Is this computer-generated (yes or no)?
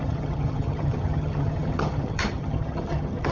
yes